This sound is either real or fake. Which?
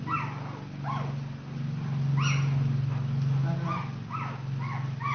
real